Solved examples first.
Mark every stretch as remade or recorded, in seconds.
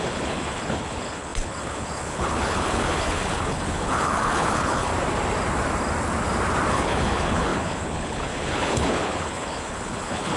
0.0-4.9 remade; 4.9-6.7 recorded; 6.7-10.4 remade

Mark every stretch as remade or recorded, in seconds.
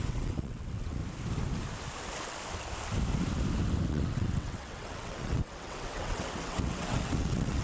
0.0-1.0 remade; 1.0-3.9 recorded; 3.9-7.6 remade